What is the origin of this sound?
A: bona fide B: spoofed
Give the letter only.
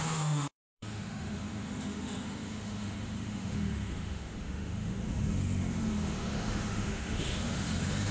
B